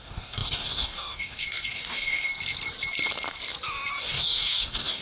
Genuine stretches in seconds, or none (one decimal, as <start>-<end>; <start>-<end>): 2.3-3.9